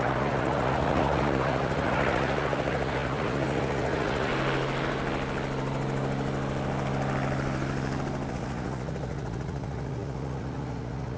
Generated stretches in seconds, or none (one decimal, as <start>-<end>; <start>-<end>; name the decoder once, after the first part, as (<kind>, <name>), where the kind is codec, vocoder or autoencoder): 0.0-4.3 (vocoder, Vocos); 8.3-11.2